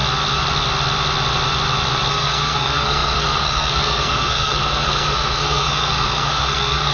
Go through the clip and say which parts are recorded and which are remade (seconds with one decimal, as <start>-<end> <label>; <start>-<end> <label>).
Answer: 0.0-2.1 recorded; 2.1-6.9 remade